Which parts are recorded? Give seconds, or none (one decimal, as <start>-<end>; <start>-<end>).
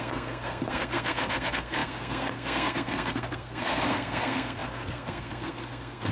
none